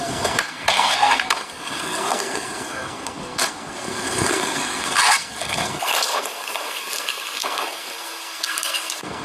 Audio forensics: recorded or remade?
remade